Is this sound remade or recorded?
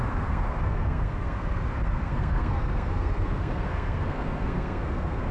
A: remade